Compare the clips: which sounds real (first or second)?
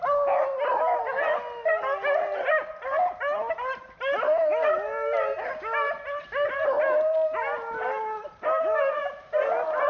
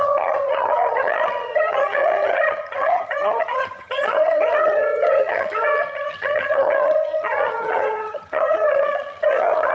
first